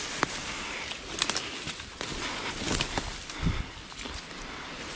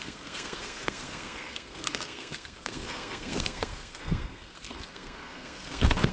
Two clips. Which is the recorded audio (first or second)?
first